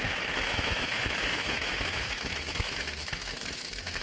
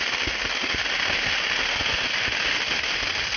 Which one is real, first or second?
second